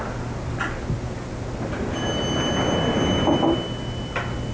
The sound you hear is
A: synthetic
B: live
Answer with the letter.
B